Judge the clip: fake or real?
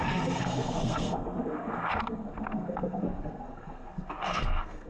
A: fake